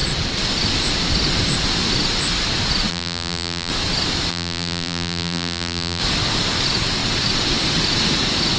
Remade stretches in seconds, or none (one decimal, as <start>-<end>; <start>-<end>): 2.9-3.7; 4.3-6.0